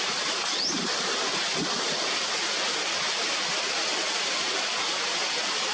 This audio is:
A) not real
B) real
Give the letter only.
B